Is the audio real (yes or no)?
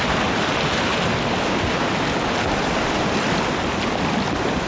yes